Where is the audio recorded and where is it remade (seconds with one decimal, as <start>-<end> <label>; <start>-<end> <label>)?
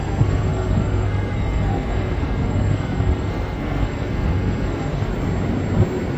0.0-5.1 remade; 5.1-6.2 recorded